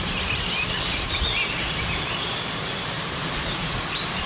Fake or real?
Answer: fake